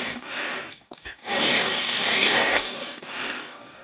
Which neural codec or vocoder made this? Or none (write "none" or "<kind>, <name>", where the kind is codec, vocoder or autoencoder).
codec, DAC